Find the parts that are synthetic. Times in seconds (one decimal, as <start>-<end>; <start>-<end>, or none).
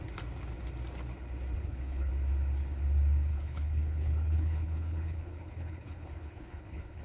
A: 1.6-2.1; 3.3-7.0